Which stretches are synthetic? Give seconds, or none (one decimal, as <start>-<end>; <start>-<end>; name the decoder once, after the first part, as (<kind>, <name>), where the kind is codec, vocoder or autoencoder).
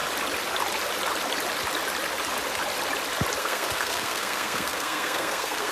3.4-5.7 (codec, SNAC)